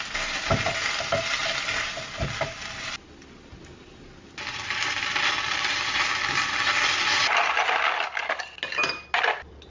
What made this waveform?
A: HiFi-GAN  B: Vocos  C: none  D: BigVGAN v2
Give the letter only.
C